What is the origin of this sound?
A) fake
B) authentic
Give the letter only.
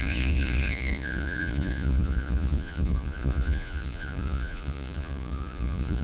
A